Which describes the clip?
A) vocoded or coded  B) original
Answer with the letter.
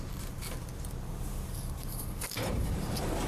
A